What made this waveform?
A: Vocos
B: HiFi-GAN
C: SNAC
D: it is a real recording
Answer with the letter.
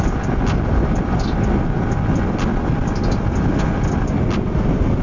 D